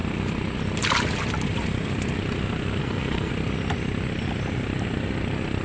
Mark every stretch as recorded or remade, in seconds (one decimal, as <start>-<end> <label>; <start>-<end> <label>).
0.0-2.8 recorded; 2.8-3.3 remade; 3.3-5.6 recorded